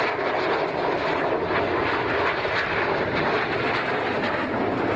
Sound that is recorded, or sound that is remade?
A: recorded